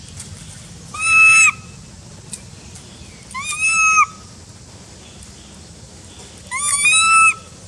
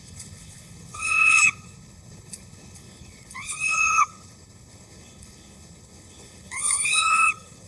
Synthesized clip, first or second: second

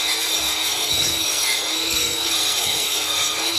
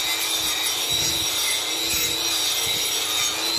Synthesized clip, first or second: first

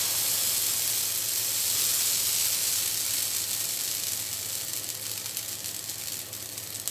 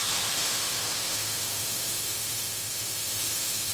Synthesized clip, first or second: second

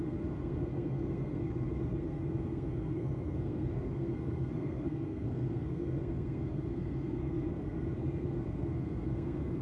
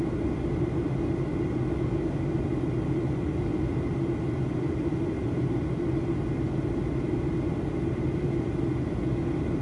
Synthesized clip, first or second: first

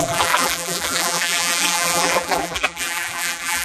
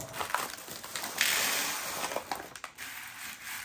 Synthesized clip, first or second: first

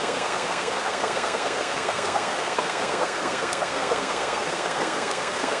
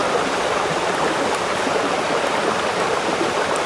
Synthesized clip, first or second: first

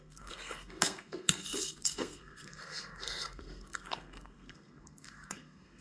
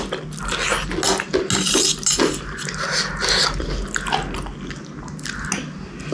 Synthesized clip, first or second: first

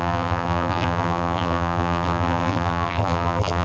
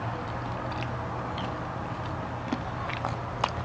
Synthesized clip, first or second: first